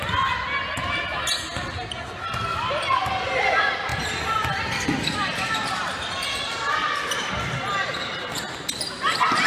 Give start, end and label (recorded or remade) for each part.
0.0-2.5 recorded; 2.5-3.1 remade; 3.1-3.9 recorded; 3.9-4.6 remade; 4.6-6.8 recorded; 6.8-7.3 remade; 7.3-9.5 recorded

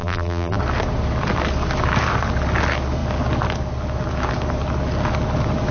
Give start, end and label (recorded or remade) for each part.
0.0-0.6 remade; 0.6-5.7 recorded

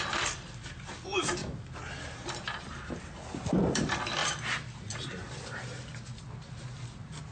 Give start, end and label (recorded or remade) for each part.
0.0-1.4 remade; 1.4-1.9 recorded; 1.9-4.2 remade; 4.2-7.3 recorded

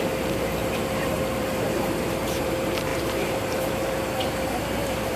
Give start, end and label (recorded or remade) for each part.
0.0-5.2 remade

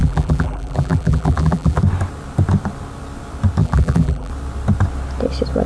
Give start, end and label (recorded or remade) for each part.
0.0-1.8 remade; 1.8-3.6 recorded; 3.6-4.3 remade; 4.3-5.7 recorded

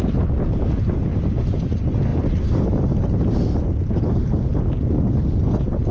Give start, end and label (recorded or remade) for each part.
0.0-1.1 recorded; 1.1-1.6 remade; 1.6-5.9 recorded